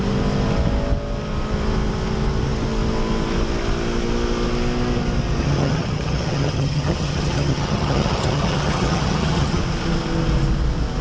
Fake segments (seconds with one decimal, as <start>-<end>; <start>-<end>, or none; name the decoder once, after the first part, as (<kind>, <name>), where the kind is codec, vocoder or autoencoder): 5.4-9.6 (vocoder, HiFi-GAN)